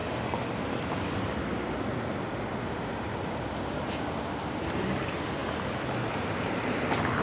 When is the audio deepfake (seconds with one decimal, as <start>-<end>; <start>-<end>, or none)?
3.5-5.4; 6.1-7.2